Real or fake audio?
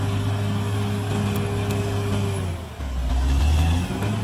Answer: real